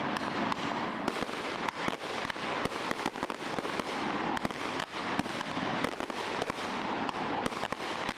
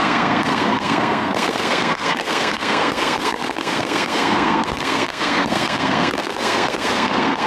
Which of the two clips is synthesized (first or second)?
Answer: second